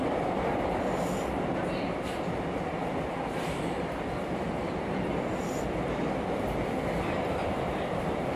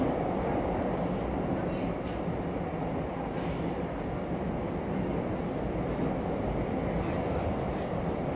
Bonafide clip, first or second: second